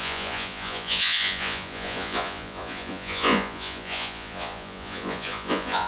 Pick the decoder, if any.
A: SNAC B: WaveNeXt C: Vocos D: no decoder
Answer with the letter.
C